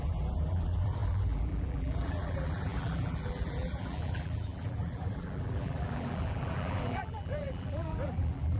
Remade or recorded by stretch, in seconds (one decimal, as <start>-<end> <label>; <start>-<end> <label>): 0.0-8.6 remade